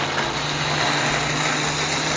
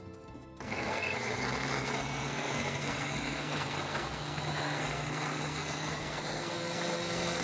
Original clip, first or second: first